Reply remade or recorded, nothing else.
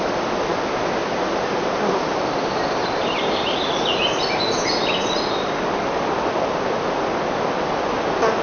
recorded